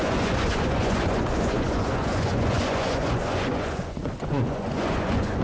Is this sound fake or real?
fake